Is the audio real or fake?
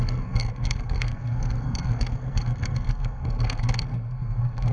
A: fake